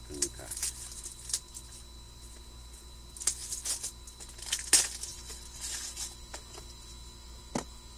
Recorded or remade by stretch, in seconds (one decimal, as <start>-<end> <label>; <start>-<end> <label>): 0.0-8.0 recorded